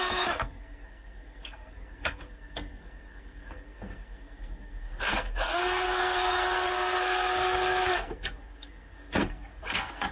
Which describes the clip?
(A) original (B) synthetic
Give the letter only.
B